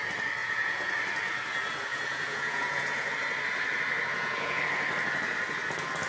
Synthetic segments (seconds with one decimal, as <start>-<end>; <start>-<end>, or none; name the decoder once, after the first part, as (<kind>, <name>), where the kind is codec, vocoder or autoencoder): 0.4-0.9 (vocoder, Vocos); 1.9-3.1; 4.1-4.6